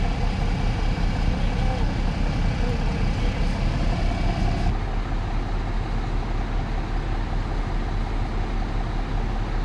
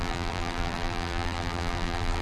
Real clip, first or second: first